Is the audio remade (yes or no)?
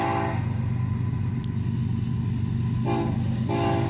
no